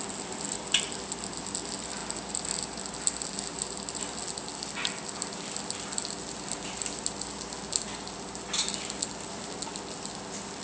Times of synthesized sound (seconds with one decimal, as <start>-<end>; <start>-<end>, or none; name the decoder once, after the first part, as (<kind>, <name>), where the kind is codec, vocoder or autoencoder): none